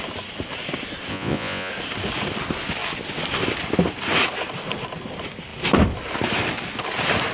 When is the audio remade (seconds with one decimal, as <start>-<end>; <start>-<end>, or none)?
1.1-1.7